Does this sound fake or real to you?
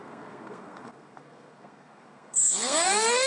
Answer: fake